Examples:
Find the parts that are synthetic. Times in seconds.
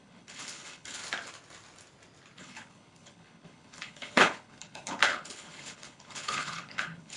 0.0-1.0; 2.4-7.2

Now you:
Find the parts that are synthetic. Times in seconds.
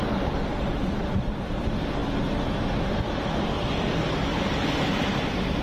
0.7-1.5; 4.3-5.6